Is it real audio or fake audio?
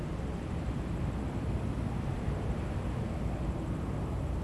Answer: real